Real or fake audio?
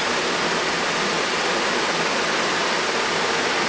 real